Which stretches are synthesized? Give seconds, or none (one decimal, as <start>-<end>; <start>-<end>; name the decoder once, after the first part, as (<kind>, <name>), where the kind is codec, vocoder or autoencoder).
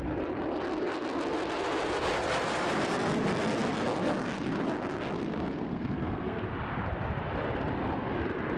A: 5.2-6.4 (codec, SNAC)